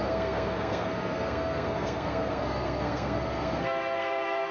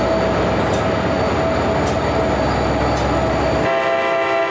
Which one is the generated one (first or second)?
first